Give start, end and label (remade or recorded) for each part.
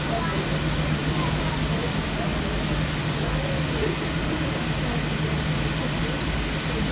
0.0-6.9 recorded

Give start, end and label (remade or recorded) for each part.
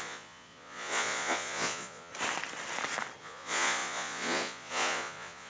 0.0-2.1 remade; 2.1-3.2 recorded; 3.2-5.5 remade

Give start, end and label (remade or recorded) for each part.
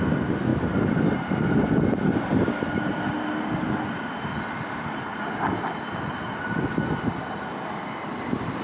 0.0-8.6 recorded